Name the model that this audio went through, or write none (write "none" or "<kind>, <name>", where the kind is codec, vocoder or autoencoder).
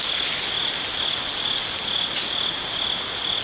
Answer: none